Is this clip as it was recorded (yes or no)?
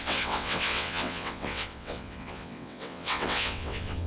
no